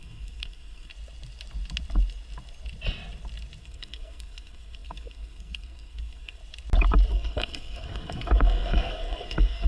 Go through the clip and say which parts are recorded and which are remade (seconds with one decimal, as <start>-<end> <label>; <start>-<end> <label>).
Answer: 0.0-0.9 remade; 0.9-3.6 recorded; 3.6-6.4 remade; 6.4-7.1 recorded; 7.1-9.7 remade